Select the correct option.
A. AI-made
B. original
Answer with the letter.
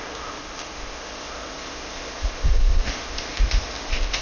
A